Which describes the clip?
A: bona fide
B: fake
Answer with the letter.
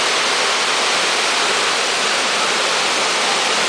A